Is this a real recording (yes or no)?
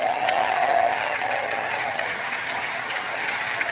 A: no